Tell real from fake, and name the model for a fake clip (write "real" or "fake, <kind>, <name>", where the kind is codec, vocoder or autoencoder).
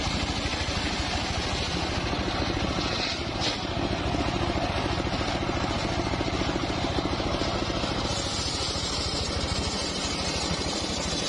real